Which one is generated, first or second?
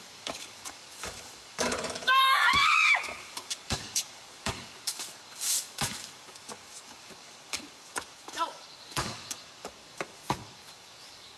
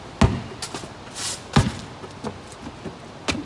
first